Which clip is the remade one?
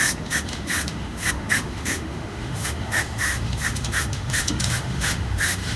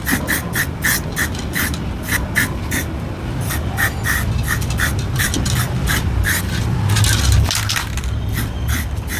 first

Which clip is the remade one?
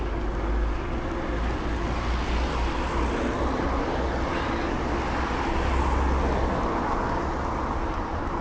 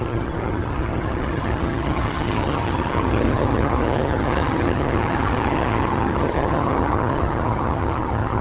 second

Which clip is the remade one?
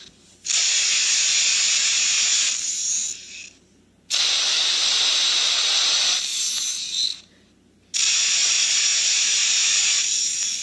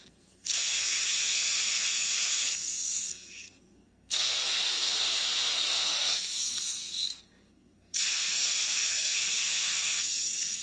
second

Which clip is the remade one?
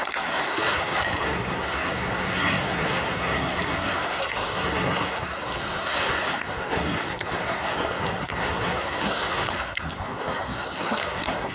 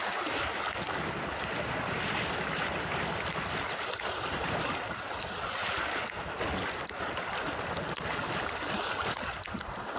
first